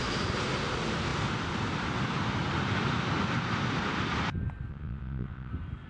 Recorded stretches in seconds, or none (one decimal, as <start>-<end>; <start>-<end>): 0.0-4.7; 5.5-5.9